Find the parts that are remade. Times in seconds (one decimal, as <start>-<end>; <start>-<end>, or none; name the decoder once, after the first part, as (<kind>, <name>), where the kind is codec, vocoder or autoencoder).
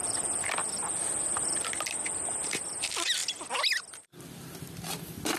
none